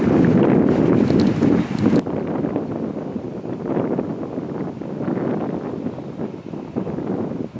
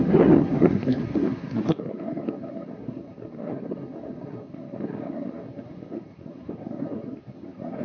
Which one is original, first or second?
first